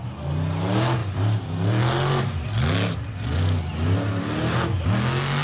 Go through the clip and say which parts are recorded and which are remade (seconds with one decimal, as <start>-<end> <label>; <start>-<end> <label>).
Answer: 0.0-5.4 recorded

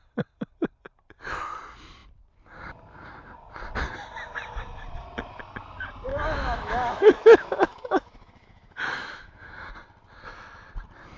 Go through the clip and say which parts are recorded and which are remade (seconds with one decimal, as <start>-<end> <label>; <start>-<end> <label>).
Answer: 0.0-6.1 recorded; 6.1-9.7 remade; 9.7-11.2 recorded

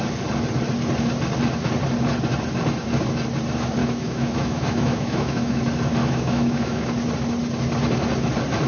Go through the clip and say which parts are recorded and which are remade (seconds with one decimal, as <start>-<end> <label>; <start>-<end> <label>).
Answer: 0.0-3.8 recorded; 3.8-5.6 remade; 5.6-6.0 recorded; 6.0-6.9 remade; 6.9-8.7 recorded

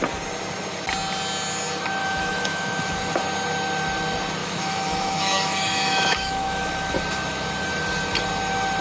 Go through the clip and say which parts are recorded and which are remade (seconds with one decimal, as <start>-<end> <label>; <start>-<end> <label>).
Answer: 0.0-2.0 recorded; 2.0-3.0 remade; 3.0-4.4 recorded; 4.4-7.0 remade; 7.0-8.8 recorded

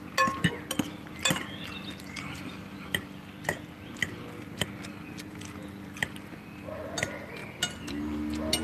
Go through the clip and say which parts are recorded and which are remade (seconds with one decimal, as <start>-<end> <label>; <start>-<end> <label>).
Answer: 0.0-8.6 recorded

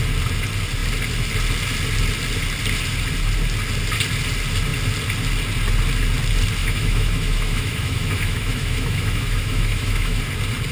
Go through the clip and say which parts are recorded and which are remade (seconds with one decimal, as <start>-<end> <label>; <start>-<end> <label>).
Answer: 0.0-6.6 recorded; 6.6-10.2 remade; 10.2-10.7 recorded

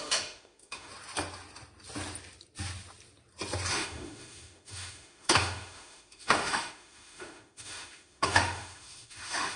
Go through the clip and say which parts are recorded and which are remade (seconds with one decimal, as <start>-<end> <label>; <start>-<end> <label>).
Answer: 0.0-0.9 remade; 0.9-3.7 recorded; 3.7-9.6 remade